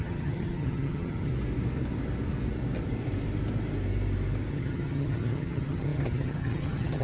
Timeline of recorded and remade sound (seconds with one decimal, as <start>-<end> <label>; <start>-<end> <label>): 0.0-1.3 remade; 1.3-4.5 recorded; 4.5-7.0 remade